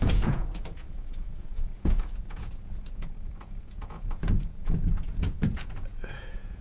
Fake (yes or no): yes